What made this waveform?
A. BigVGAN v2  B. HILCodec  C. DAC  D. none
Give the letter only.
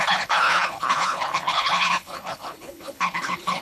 B